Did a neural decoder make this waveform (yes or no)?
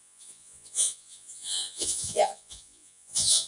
yes